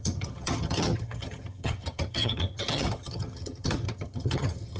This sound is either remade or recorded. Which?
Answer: remade